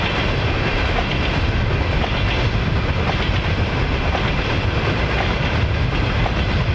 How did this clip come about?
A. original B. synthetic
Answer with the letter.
A